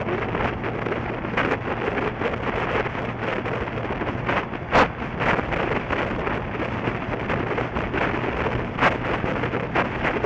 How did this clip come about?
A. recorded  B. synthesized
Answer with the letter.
A